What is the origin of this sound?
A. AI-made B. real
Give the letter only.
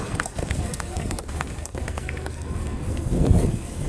A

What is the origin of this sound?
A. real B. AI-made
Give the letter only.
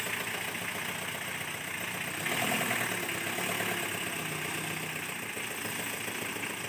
A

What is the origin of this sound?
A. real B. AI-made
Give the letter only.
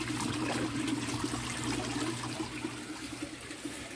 A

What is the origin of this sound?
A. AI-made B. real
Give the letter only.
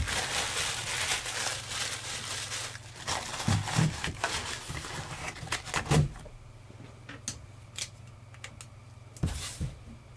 B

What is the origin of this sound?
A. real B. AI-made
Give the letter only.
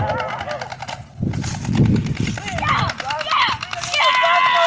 A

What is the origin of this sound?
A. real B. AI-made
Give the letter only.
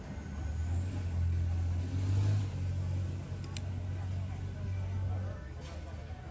A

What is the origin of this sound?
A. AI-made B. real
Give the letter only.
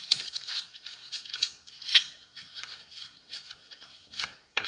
A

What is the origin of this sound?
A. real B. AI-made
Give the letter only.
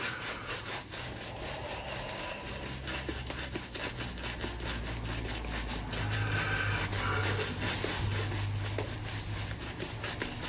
A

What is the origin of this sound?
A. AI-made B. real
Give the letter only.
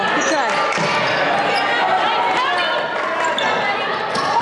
B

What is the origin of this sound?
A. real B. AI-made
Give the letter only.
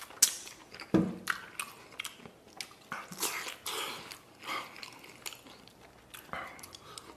A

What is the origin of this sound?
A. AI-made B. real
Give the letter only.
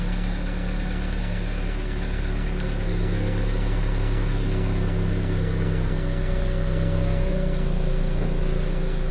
A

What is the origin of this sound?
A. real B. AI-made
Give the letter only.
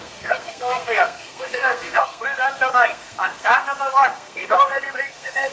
B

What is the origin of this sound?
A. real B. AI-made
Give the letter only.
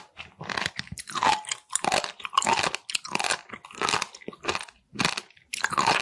A